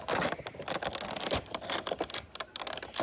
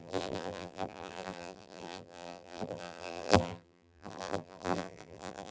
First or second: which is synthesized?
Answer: second